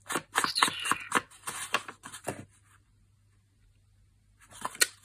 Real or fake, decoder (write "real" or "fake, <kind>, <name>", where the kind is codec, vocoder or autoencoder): real